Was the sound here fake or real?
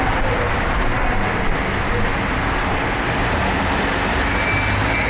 real